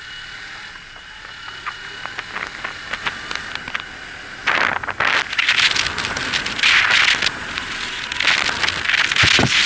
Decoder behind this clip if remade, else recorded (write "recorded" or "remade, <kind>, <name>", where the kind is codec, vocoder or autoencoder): recorded